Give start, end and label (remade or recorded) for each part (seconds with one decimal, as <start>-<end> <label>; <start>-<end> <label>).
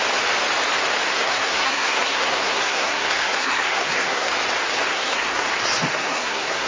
0.0-1.1 recorded; 1.1-4.3 remade; 4.3-4.9 recorded; 4.9-5.5 remade; 5.5-5.9 recorded; 5.9-6.7 remade